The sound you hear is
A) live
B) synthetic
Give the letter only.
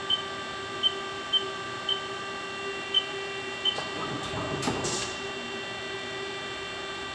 B